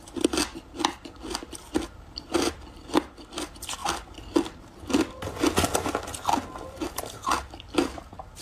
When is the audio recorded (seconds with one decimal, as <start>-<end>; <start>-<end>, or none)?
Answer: 0.0-8.4